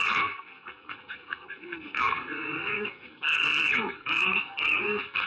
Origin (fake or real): fake